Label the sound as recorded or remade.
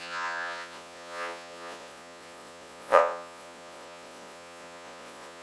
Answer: remade